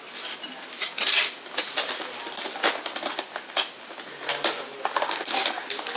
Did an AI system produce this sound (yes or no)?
no